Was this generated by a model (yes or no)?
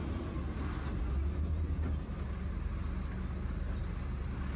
no